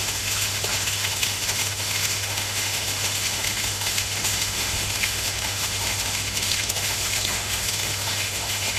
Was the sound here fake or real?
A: fake